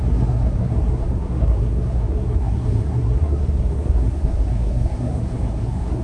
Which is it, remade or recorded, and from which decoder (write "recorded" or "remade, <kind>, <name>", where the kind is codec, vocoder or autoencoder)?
remade, codec, SNAC